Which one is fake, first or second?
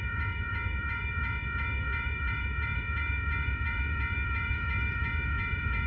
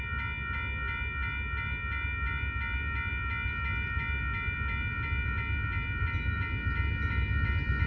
first